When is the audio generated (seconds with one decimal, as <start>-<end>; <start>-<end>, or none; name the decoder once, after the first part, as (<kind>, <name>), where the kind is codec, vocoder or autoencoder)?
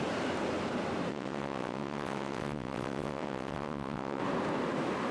1.1-4.2 (vocoder, WaveNeXt)